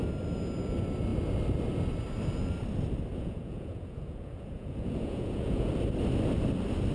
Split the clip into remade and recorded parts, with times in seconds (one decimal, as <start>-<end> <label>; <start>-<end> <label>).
0.0-3.1 recorded; 3.1-5.7 remade; 5.7-6.9 recorded